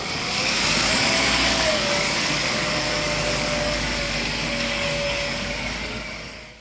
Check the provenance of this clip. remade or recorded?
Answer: remade